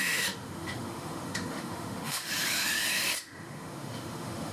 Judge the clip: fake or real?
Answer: fake